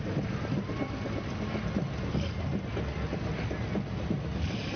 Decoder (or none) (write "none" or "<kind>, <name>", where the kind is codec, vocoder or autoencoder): none